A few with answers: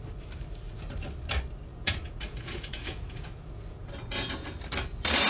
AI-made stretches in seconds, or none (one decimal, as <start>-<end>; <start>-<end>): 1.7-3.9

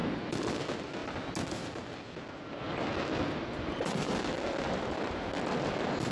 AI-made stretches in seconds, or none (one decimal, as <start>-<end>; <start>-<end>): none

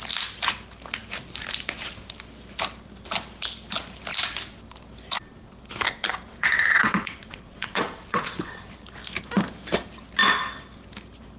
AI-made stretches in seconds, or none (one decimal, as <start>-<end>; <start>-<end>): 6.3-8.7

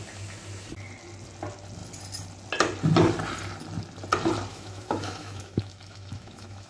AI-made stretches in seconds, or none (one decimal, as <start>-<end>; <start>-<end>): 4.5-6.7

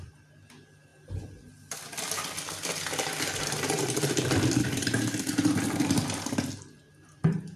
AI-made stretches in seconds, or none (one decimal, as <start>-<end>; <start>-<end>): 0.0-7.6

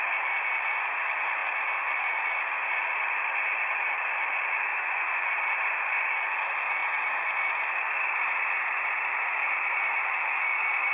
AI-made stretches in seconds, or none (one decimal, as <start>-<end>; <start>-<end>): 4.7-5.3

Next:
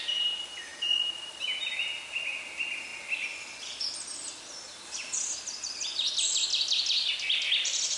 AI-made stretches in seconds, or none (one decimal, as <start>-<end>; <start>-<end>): none